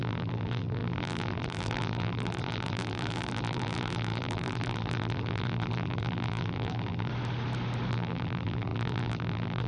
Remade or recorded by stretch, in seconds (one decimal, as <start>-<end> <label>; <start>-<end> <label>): 0.0-7.1 remade; 7.1-7.9 recorded; 7.9-9.7 remade